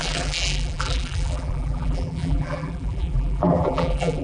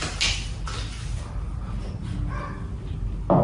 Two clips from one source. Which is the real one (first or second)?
second